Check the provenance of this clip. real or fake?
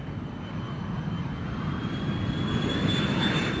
real